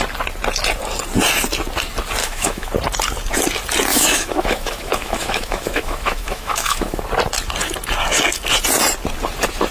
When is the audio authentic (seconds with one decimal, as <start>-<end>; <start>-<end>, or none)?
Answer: 0.0-2.2; 2.7-3.9; 7.0-9.7